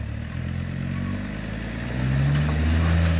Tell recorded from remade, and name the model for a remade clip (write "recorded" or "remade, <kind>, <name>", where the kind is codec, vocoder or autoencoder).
recorded